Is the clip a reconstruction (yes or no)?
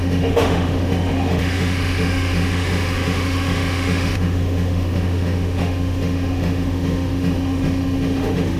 yes